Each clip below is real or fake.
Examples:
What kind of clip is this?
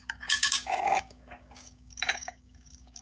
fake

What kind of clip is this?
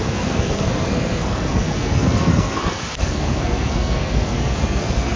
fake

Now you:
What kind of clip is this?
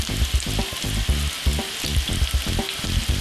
real